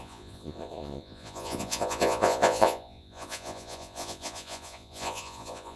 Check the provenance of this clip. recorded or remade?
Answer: remade